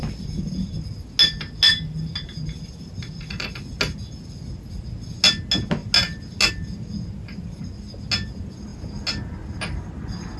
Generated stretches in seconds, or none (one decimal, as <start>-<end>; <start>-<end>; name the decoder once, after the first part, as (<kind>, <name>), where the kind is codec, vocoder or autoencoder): none